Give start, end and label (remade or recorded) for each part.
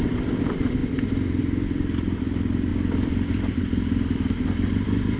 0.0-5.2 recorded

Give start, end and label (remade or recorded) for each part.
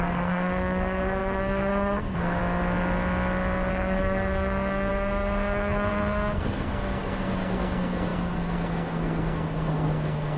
0.0-2.4 remade; 2.4-3.7 recorded; 3.7-10.4 remade